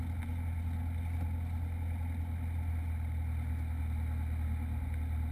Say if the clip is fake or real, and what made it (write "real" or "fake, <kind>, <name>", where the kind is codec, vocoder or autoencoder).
real